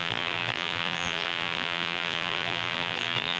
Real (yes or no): no